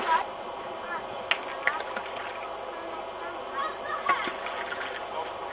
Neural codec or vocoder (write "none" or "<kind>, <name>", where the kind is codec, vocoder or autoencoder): none